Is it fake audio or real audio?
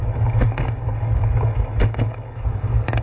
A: fake